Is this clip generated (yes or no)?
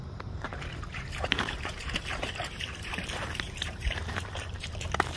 yes